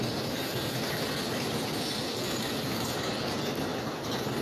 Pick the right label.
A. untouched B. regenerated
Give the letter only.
A